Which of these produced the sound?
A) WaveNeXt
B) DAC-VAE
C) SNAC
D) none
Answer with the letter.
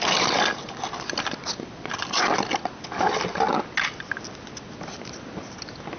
D